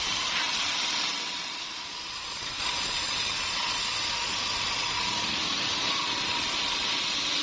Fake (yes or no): no